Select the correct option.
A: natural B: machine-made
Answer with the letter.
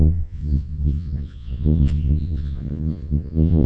B